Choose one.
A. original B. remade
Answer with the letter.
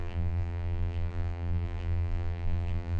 B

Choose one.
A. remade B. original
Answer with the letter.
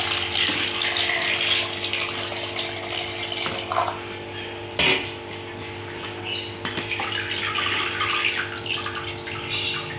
B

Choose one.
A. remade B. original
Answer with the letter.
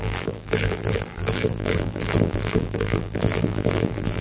A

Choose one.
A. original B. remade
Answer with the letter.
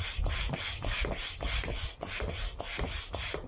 A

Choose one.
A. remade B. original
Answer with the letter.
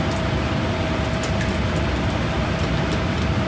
B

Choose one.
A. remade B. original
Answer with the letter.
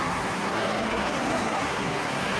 A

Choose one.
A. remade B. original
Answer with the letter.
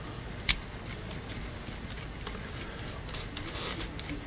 B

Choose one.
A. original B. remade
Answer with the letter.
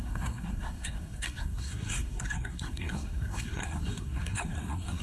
B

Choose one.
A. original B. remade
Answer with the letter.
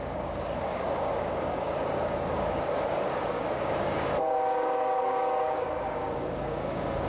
B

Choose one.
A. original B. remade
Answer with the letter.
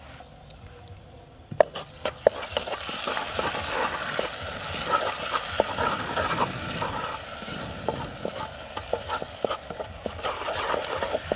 A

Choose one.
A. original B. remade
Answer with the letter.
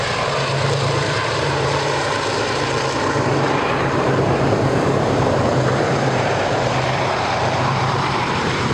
B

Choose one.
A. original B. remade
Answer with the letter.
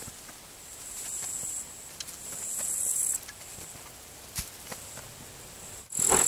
A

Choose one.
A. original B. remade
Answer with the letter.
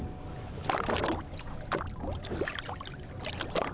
A